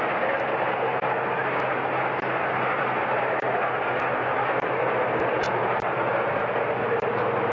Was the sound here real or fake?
real